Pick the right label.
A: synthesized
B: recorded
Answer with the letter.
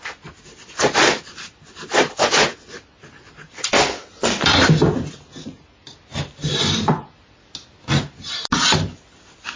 B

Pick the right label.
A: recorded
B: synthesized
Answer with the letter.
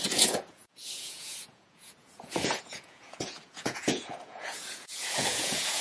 B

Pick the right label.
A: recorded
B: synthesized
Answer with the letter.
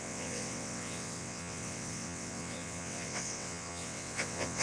B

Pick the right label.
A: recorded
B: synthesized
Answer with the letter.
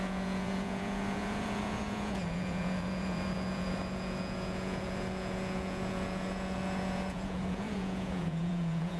B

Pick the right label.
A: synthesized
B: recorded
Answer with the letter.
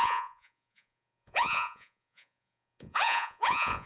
A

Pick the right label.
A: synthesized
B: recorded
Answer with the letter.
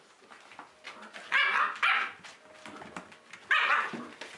B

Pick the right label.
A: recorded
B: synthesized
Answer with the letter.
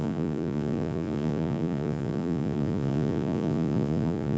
B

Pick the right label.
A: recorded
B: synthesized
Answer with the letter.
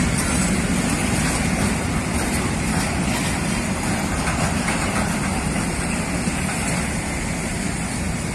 A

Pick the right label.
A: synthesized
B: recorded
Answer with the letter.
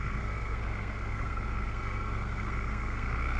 A